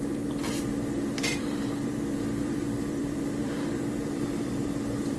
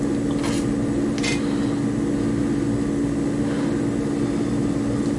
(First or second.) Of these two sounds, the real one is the second